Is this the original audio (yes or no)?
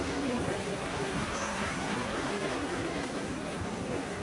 no